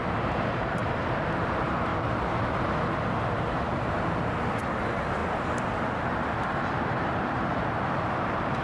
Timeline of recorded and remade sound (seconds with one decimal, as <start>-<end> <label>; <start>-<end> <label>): 0.0-0.8 remade; 0.8-1.4 recorded; 1.4-1.9 remade; 1.9-4.8 recorded; 4.8-5.2 remade; 5.2-7.0 recorded; 7.0-8.6 remade